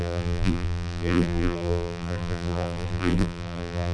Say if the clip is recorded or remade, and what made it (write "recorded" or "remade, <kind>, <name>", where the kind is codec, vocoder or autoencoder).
remade, vocoder, BigVGAN v2